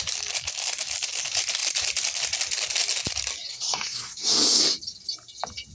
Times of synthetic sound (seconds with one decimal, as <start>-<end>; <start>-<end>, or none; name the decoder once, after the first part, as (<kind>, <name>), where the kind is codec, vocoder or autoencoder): 3.5-4.6 (codec, SNAC)